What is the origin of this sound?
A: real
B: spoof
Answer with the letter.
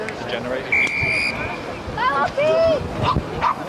A